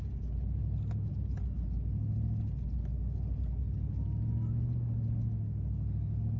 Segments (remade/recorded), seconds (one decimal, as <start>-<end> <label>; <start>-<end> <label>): 0.0-6.4 recorded

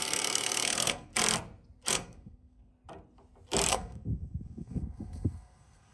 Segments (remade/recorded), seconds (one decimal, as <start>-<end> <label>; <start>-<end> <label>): 0.0-1.1 remade; 1.1-1.9 recorded; 1.9-2.7 remade; 2.7-3.7 recorded; 3.7-5.9 remade

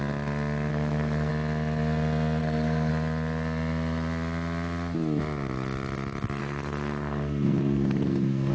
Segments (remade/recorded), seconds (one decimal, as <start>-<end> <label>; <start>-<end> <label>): 0.0-0.7 recorded; 0.7-1.3 remade; 1.3-2.4 recorded; 2.4-2.9 remade; 2.9-6.4 recorded; 6.4-8.5 remade

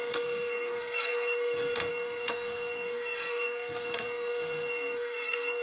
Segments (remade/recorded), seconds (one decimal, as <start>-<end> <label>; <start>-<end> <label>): 0.0-5.6 remade

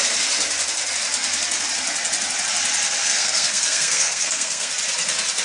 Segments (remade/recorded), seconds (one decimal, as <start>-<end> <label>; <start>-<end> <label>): 0.0-3.0 recorded; 3.0-4.7 remade; 4.7-5.4 recorded

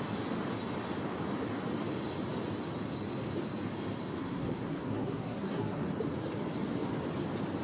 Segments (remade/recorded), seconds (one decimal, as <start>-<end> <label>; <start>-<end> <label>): 0.0-4.2 recorded; 4.2-5.8 remade; 5.8-7.6 recorded

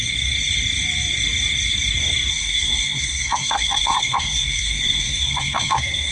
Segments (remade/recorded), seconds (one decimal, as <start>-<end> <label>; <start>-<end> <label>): 0.0-2.3 recorded; 2.3-6.1 remade

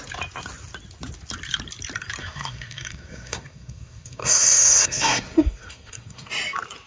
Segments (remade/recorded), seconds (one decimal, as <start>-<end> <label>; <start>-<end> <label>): 0.0-2.2 recorded; 2.2-6.3 remade; 6.3-6.9 recorded